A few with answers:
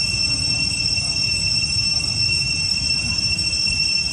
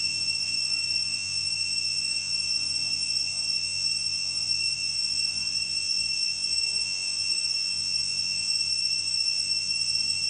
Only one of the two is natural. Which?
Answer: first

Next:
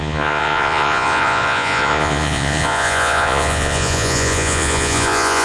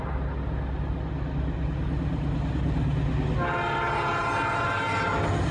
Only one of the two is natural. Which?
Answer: second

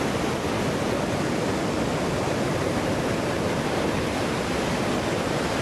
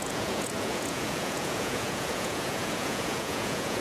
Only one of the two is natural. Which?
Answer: first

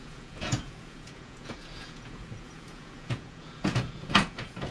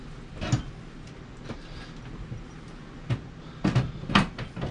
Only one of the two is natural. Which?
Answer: second